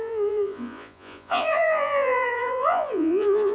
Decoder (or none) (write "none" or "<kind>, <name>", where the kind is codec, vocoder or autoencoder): vocoder, Vocos